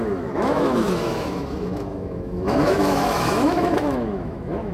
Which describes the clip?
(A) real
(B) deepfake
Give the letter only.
B